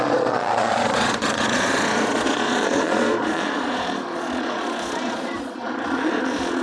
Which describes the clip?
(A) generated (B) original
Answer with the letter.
A